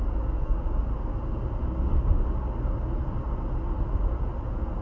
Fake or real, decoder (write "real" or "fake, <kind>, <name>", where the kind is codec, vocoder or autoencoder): real